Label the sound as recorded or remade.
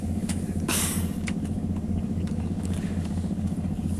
remade